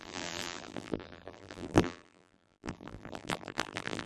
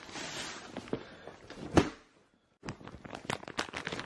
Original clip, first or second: second